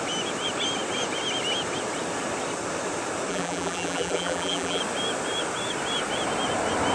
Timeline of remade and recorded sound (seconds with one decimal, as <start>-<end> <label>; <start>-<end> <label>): 0.0-3.3 recorded; 3.3-4.8 remade; 4.8-6.9 recorded